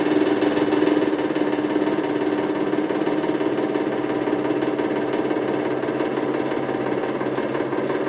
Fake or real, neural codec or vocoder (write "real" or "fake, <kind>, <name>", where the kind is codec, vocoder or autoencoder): real